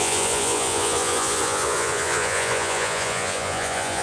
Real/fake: fake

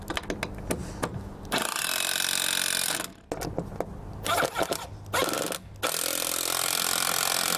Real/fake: real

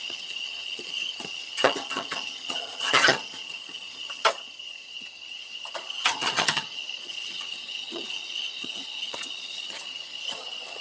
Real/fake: fake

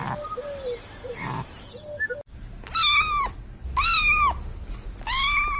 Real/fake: real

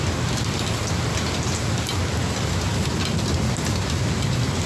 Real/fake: real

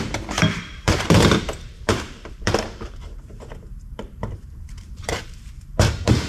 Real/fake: fake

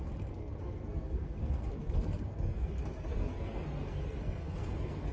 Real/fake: fake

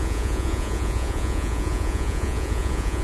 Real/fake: fake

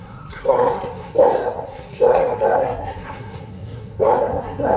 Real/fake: fake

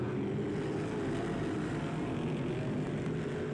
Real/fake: real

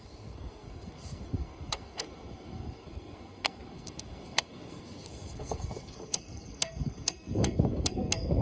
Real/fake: fake